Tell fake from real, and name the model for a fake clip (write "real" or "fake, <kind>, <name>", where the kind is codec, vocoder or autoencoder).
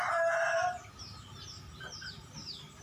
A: real